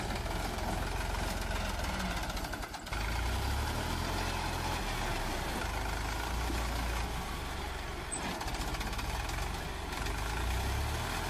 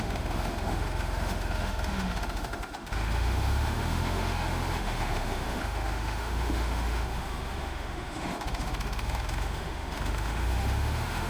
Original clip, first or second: first